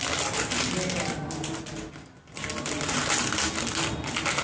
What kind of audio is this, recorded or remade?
recorded